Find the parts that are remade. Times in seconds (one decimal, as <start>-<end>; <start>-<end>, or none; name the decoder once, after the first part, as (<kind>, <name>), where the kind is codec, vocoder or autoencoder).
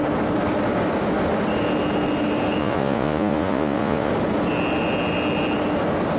2.6-4.1 (vocoder, Vocos)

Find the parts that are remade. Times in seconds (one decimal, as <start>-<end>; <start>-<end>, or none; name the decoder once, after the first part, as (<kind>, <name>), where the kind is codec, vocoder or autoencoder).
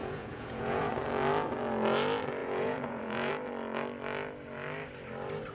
0.0-0.9 (vocoder, Vocos); 2.4-3.3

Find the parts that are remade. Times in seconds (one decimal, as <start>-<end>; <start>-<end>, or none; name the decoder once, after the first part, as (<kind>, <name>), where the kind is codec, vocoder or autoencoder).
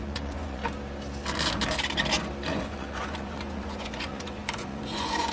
0.0-0.6 (vocoder, Vocos); 2.5-5.3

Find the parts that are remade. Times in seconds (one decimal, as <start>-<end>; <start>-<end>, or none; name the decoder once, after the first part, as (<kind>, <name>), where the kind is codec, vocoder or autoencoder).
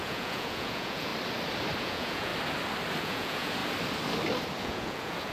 0.0-1.1 (vocoder, Vocos); 1.8-2.3; 3.0-3.6; 4.6-5.3